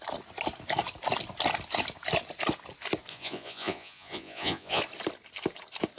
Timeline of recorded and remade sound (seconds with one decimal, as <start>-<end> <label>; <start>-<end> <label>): 0.0-3.1 recorded; 3.1-4.8 remade; 4.8-6.0 recorded